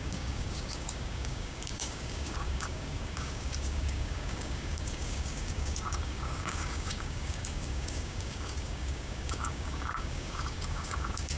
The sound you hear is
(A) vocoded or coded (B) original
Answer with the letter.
A